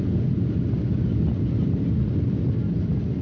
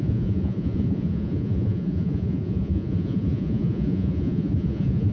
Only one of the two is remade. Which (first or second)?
second